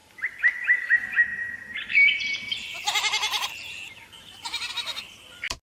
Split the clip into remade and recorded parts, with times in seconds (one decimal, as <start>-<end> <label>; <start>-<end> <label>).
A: 0.0-0.9 remade; 0.9-1.3 recorded; 1.3-4.7 remade; 4.7-5.7 recorded